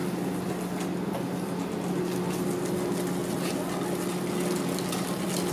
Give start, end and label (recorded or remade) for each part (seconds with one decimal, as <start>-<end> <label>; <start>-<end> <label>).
0.0-5.5 recorded